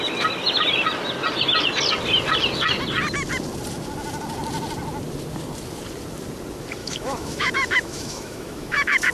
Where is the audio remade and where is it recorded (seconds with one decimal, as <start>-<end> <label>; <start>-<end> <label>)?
0.0-6.8 recorded; 6.8-9.1 remade